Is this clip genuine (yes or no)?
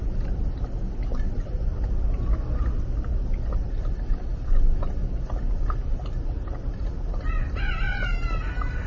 yes